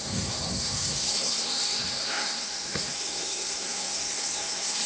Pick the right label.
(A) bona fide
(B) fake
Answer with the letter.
B